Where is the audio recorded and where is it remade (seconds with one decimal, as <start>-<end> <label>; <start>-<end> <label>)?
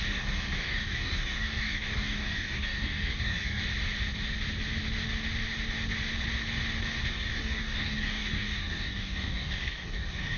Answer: 0.0-3.6 remade; 3.6-7.1 recorded; 7.1-10.4 remade